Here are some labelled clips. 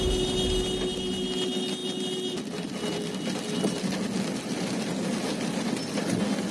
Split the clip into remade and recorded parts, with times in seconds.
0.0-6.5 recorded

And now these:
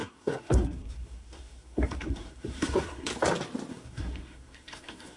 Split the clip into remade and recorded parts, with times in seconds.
0.0-3.1 remade; 3.1-3.7 recorded; 3.7-5.2 remade

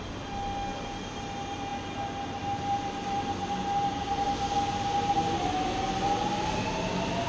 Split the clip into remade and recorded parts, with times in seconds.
0.0-7.3 recorded